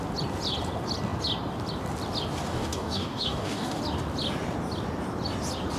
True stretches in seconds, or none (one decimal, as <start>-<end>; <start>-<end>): 0.0-2.4; 3.8-5.8